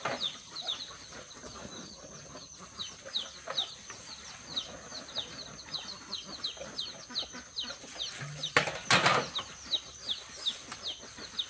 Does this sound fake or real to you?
real